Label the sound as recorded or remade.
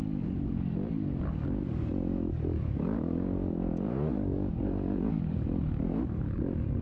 remade